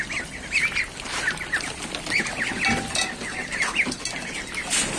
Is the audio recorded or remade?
recorded